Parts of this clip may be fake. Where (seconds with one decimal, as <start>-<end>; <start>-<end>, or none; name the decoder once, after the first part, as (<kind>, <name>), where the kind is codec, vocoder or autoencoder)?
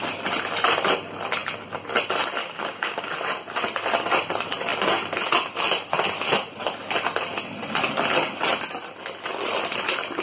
2.4-3.1 (codec, DAC)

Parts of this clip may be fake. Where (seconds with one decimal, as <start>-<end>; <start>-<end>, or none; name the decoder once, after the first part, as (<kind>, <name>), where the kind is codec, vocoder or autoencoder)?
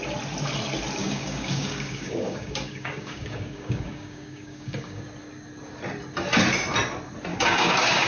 1.0-5.0 (codec, DAC); 7.3-8.1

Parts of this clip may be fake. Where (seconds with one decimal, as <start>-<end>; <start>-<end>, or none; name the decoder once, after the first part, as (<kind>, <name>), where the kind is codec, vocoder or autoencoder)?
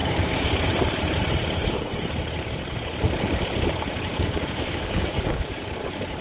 0.0-0.5 (codec, DAC); 1.4-2.0; 4.1-5.6